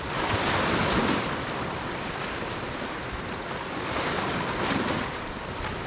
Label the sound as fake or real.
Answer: real